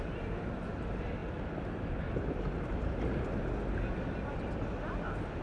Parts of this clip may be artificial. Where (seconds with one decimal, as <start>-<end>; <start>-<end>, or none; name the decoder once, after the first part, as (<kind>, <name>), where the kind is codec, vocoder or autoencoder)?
none